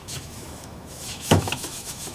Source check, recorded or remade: remade